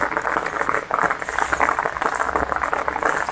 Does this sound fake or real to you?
real